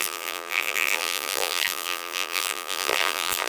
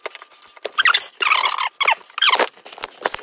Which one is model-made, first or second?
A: first